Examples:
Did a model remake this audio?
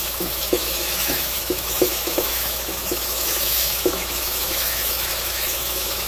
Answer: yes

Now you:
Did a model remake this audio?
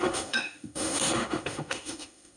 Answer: yes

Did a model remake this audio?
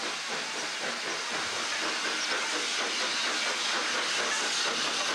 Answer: no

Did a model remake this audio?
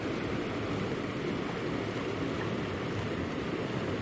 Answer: no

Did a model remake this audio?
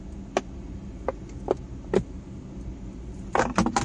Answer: no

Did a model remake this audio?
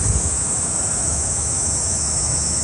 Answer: yes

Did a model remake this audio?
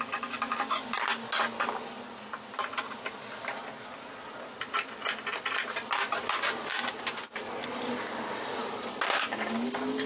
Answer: no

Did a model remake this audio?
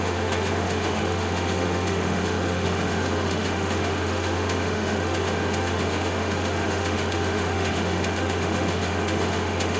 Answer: yes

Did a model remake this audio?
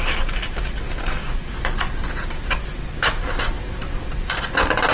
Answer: no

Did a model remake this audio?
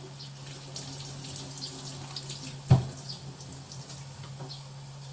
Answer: no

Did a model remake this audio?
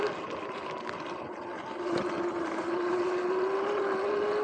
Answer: no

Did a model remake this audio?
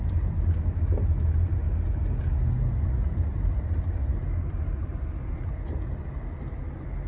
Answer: no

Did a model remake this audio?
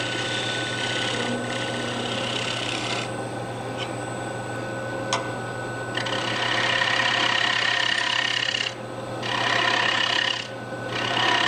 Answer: no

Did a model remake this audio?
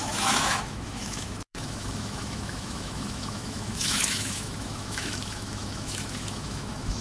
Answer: yes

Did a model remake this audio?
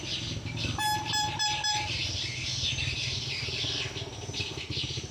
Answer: no